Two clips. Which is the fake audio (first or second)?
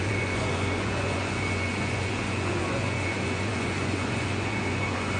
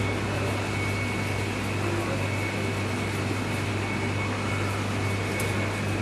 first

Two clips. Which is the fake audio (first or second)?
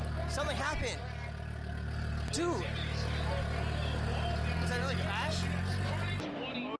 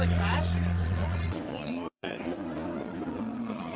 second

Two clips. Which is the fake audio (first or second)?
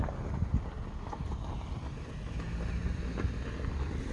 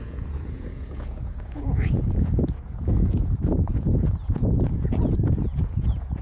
second